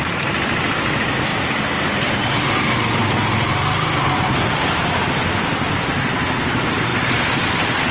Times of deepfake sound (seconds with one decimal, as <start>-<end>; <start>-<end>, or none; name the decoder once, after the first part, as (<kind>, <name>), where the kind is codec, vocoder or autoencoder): 0.0-1.3 (vocoder, BigVGAN v2); 4.5-7.9